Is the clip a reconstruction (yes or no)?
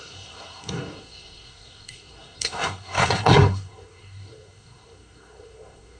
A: yes